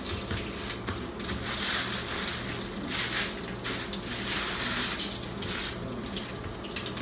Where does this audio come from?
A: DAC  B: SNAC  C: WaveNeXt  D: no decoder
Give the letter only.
D